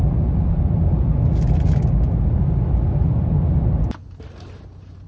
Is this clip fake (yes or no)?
no